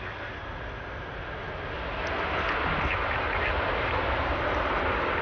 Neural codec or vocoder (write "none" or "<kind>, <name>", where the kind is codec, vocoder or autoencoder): none